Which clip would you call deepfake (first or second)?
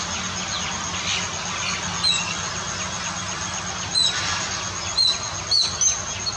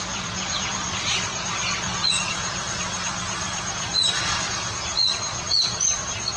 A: second